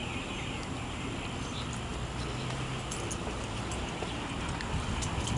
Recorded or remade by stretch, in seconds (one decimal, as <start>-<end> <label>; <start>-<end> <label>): 0.0-1.1 remade; 1.1-5.4 recorded